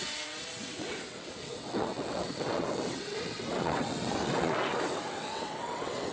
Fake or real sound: fake